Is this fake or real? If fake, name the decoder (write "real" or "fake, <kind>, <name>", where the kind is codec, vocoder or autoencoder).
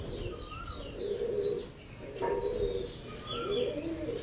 real